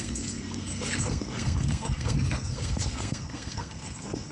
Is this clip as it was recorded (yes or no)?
no